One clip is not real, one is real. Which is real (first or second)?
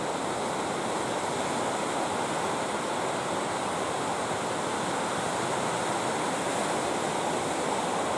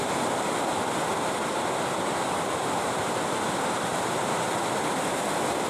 first